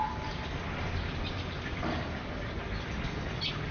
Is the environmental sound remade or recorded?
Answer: recorded